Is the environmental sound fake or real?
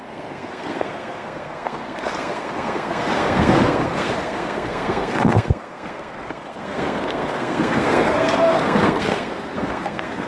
fake